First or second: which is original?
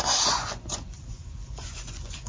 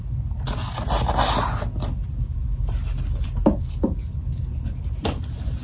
second